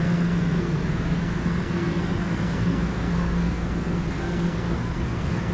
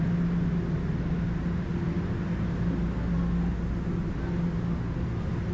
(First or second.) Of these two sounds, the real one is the second